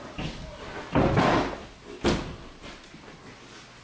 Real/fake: real